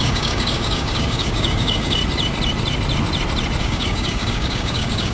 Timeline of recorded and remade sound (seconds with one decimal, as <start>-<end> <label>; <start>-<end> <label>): 0.0-2.0 remade; 2.0-3.6 recorded; 3.6-5.1 remade